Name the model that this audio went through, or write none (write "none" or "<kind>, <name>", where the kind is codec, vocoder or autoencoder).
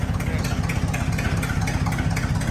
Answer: none